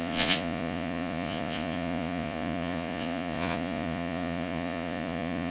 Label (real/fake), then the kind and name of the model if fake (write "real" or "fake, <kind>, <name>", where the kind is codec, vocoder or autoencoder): fake, vocoder, Vocos